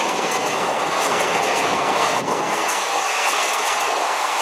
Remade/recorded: remade